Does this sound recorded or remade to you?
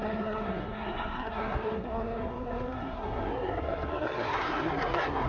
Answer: remade